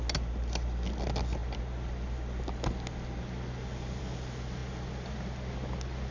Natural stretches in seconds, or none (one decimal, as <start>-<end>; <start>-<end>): 0.0-6.1